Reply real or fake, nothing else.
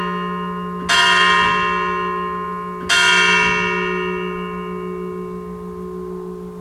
real